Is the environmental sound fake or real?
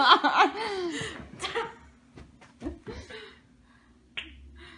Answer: real